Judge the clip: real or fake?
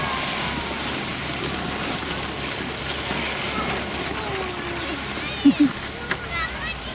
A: real